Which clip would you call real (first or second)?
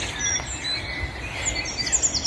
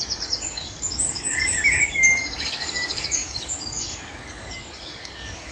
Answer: first